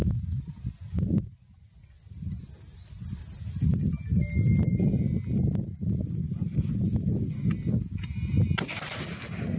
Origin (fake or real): real